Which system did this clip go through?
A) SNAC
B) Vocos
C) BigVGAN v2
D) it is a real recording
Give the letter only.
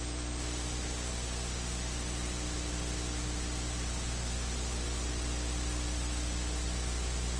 D